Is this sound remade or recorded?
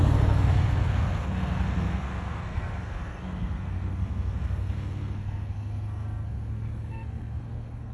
remade